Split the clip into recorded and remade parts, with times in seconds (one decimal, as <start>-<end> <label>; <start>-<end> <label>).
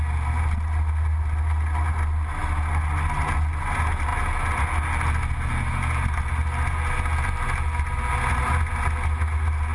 0.0-9.7 recorded